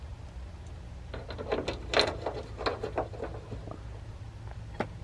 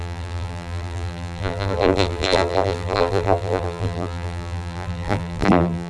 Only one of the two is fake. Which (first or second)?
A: second